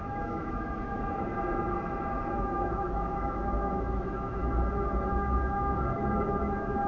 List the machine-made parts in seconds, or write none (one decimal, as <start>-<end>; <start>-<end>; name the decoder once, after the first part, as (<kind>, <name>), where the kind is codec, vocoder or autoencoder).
0.0-1.3 (autoencoder, DAC-VAE); 2.3-4.4; 5.1-6.9